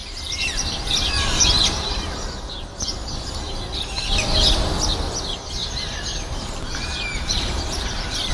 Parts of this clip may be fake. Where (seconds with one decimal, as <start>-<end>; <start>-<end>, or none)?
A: 0.0-4.1; 5.6-8.3